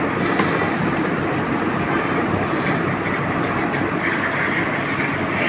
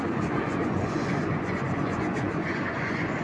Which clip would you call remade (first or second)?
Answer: second